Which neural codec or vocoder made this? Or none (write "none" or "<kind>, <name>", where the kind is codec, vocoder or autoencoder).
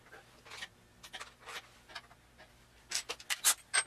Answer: none